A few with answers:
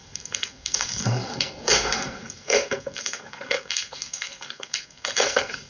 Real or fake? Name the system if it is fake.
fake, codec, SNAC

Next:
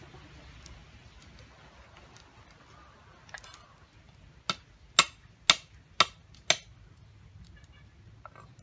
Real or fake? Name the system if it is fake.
real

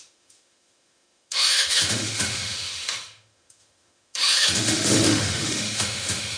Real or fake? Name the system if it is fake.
fake, autoencoder, DAC-VAE